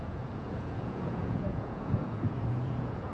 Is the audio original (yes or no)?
no